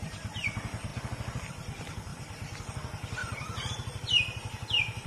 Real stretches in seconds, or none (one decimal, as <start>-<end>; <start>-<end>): 0.0-0.9; 1.5-3.2; 3.7-5.1